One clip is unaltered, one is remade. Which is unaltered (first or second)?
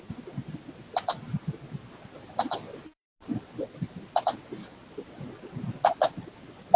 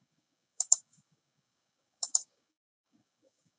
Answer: first